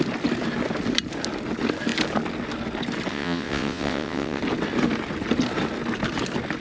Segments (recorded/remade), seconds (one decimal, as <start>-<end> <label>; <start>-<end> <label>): 0.0-3.1 recorded; 3.1-4.4 remade; 4.4-6.6 recorded